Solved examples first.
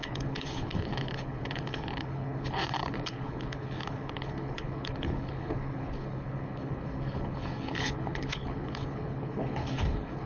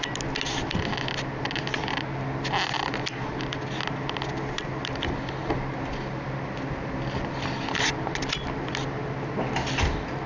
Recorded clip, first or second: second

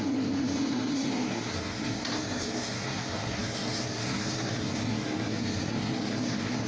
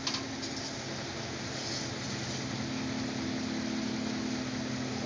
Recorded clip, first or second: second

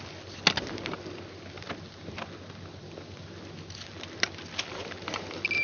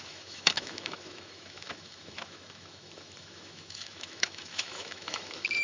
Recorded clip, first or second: first